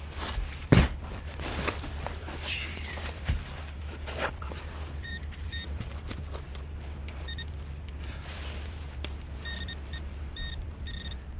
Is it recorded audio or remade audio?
remade